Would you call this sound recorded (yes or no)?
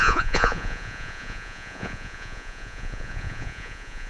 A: no